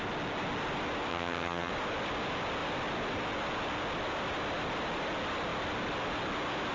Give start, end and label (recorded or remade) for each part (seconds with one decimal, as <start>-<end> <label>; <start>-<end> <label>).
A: 0.0-1.1 recorded; 1.1-1.7 remade; 1.7-6.7 recorded